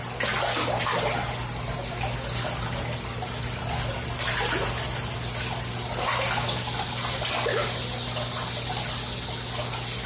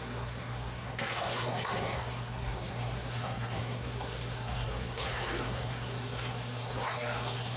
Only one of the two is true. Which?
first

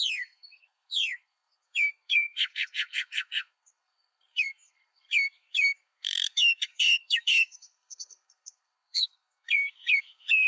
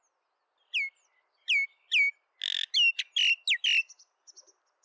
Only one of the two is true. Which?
second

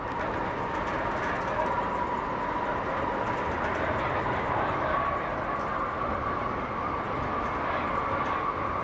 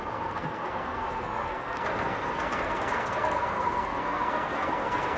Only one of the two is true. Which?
first